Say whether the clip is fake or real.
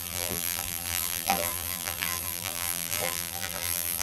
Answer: fake